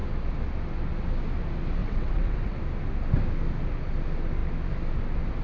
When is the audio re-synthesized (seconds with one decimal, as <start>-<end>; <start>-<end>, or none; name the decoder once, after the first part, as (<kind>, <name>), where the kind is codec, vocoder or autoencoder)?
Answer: 1.8-2.6 (vocoder, WaveNeXt)